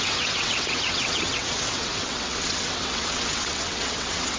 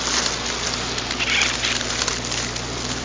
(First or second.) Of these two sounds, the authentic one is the second